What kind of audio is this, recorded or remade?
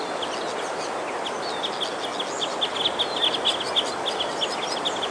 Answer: recorded